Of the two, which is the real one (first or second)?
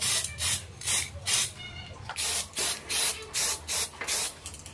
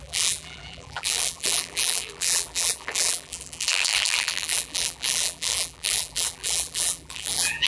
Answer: first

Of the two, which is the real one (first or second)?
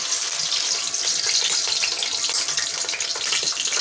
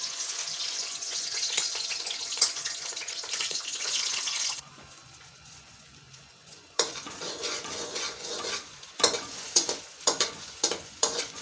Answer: first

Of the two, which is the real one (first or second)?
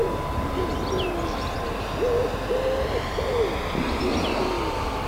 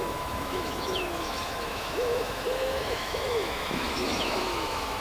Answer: first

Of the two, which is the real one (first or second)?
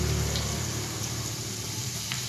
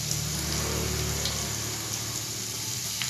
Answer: second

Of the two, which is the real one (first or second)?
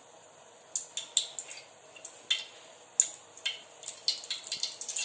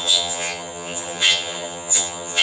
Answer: first